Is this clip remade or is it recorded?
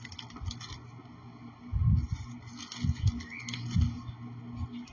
recorded